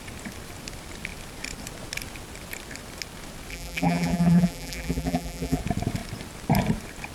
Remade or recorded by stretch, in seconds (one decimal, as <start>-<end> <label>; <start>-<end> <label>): 0.0-3.5 recorded; 3.5-5.6 remade; 5.6-7.1 recorded